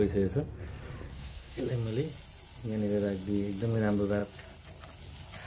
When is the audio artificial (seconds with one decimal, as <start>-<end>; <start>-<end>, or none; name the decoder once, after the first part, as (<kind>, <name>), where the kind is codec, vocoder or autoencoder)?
1.1-1.6 (codec, SNAC)